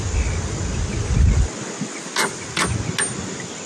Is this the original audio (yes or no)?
yes